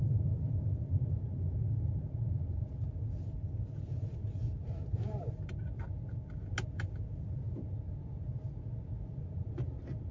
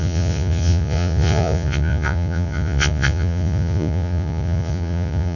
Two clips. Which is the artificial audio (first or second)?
second